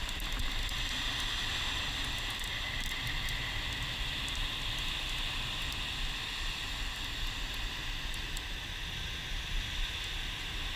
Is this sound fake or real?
real